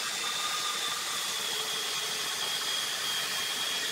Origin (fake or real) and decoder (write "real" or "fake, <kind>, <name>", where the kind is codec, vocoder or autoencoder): real